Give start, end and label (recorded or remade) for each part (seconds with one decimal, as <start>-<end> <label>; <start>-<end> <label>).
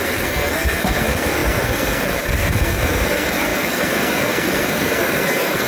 0.0-5.7 remade